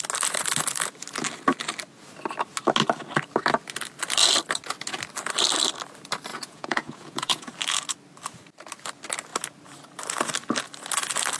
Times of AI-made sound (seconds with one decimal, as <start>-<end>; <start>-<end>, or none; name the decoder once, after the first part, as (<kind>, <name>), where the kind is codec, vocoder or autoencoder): 6.3-7.5 (vocoder, Vocos)